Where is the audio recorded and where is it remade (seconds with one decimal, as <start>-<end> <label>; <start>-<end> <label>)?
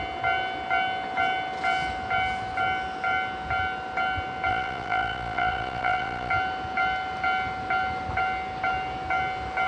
0.0-4.5 recorded; 4.5-6.3 remade; 6.3-9.7 recorded